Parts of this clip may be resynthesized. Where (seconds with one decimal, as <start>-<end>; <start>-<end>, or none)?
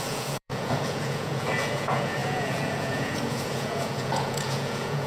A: 0.0-5.1